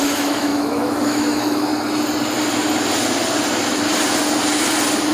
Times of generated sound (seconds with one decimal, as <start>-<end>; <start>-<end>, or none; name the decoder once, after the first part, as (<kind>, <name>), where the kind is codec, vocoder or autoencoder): 0.0-1.7 (autoencoder, DAC-VAE)